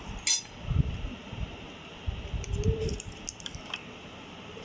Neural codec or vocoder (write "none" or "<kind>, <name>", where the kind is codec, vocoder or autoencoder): none